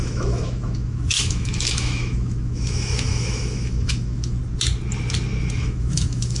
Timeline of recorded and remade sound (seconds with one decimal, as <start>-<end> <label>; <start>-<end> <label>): 0.0-4.4 remade; 4.4-5.6 recorded; 5.6-6.4 remade